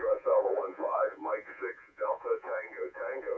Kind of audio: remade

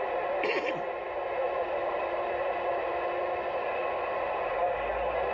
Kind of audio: recorded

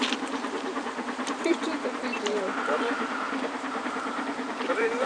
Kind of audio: remade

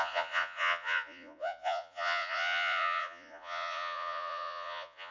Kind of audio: remade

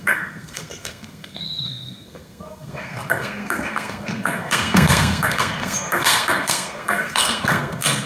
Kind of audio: remade